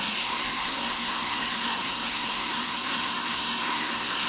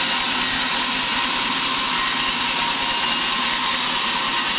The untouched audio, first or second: second